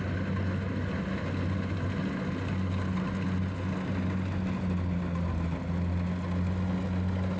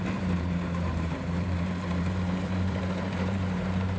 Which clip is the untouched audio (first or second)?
first